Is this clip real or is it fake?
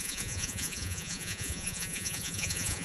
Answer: fake